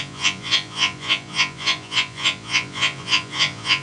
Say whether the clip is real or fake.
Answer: fake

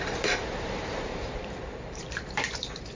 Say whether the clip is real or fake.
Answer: fake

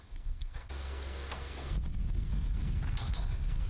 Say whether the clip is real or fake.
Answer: fake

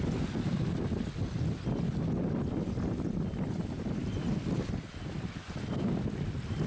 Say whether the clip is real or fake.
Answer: real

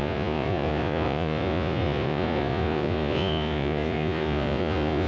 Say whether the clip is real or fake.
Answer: fake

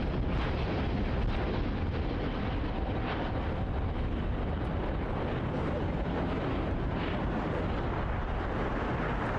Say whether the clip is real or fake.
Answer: real